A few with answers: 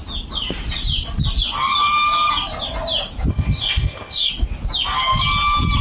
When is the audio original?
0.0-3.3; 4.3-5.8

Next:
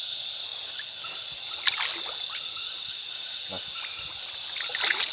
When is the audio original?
0.0-5.1

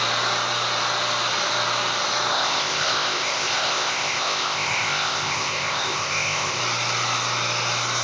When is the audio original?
0.0-2.3; 6.6-8.0

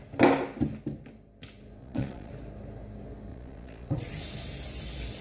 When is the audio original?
0.0-1.8; 2.3-3.3; 4.1-5.2

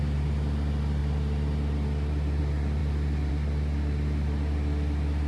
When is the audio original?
0.0-5.3

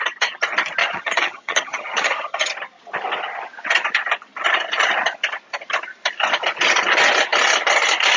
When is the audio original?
0.0-0.8; 2.5-8.2